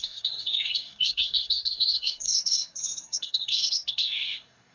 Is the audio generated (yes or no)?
yes